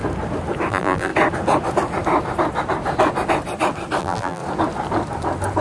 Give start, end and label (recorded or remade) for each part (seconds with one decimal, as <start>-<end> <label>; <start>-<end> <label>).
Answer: 0.0-0.7 recorded; 0.7-1.1 remade; 1.1-4.0 recorded; 4.0-4.4 remade; 4.4-5.6 recorded

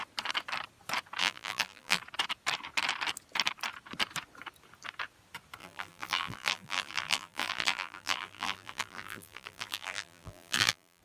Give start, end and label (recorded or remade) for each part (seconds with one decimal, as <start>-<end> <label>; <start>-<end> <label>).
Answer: 0.0-1.2 recorded; 1.2-2.0 remade; 2.0-5.6 recorded; 5.6-11.0 remade

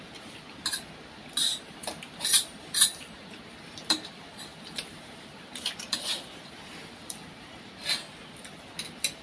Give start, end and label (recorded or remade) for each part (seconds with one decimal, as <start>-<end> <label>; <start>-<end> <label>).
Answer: 0.0-1.4 recorded; 1.4-3.4 remade; 3.4-4.5 recorded; 4.5-7.5 remade; 7.5-9.2 recorded